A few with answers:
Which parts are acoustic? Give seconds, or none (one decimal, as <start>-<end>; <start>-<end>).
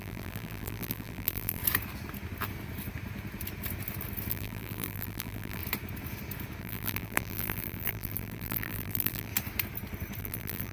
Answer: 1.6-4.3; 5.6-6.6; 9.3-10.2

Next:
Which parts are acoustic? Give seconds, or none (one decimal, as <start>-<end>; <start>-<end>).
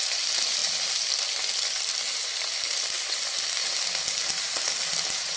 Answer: 0.0-0.6; 3.8-5.4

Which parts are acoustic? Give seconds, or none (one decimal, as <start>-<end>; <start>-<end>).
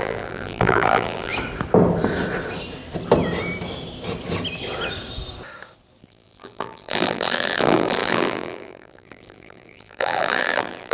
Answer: 1.3-6.0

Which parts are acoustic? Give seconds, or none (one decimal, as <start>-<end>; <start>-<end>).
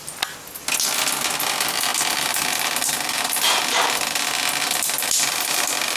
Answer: 0.0-6.0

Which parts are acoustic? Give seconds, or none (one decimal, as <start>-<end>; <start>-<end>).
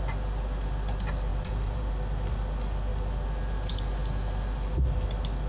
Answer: 0.0-1.3; 1.9-5.5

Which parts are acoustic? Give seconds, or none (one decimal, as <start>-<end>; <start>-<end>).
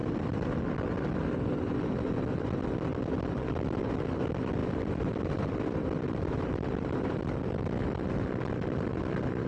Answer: 0.0-4.6; 6.3-9.5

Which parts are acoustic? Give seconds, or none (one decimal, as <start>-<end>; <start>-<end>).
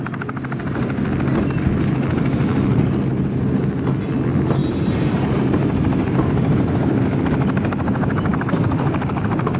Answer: 0.0-3.1; 3.6-4.6; 7.2-9.6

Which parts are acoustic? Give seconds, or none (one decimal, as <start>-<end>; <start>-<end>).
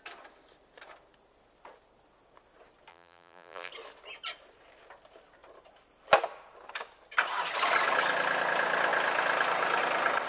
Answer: 0.0-2.9; 3.7-10.3